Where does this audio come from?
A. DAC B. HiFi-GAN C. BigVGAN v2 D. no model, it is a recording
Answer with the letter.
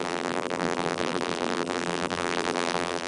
C